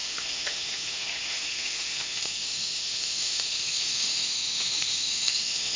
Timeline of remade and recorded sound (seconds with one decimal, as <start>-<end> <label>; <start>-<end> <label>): 0.0-5.8 remade